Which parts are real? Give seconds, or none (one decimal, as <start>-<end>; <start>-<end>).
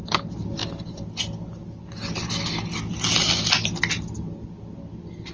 0.0-5.3